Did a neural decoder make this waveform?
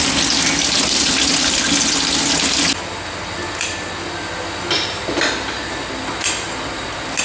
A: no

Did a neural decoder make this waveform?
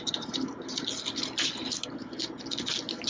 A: no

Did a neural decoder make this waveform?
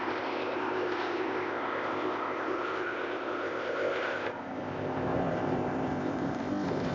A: yes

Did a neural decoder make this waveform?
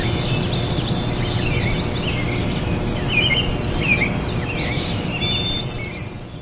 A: no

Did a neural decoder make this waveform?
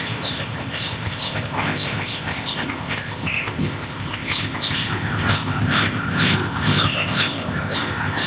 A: yes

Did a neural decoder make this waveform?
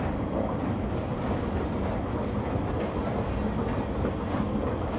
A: no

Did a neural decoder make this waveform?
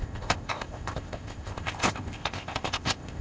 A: yes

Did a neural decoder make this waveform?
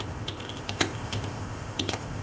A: yes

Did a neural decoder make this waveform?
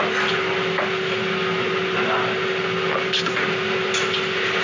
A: no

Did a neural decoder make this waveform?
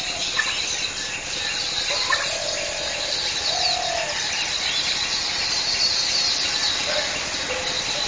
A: no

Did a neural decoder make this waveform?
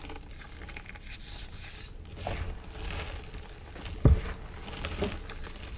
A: no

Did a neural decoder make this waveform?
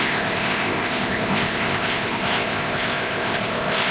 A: yes